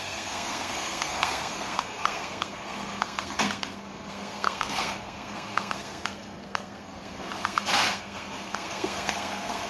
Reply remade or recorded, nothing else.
remade